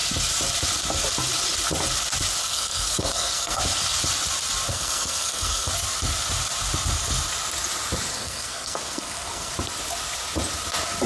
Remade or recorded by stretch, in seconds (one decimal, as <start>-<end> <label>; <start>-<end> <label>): 0.0-2.4 recorded; 2.4-3.6 remade; 3.6-4.7 recorded; 4.7-5.7 remade; 5.7-8.1 recorded; 8.1-9.5 remade; 9.5-11.1 recorded